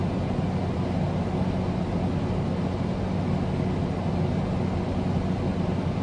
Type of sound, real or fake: real